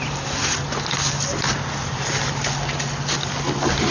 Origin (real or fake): real